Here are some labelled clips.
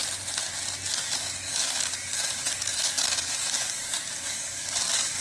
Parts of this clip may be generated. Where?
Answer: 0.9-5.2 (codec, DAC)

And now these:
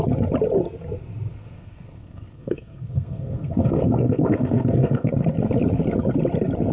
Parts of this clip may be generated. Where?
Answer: 1.3-5.1 (codec, SNAC)

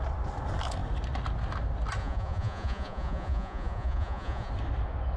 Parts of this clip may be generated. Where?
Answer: 2.0-4.5 (vocoder, Vocos)

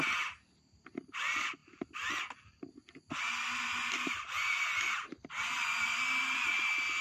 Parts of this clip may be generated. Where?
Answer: none

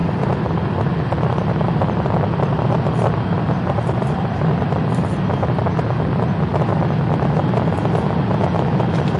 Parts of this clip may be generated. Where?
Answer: 0.0-4.4 (vocoder, BigVGAN v2)

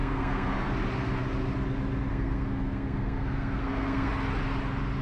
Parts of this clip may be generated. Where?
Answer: 0.0-0.7 (codec, SNAC); 2.1-4.1

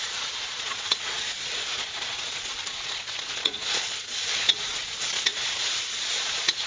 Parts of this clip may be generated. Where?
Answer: 0.0-6.7 (vocoder, Vocos)

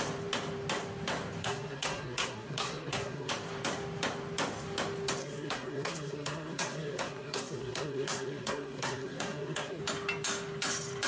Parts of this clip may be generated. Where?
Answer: 1.4-3.3 (codec, SNAC); 5.2-9.8